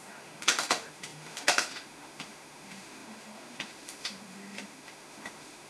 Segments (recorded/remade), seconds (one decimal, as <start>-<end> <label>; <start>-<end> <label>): 0.0-5.7 remade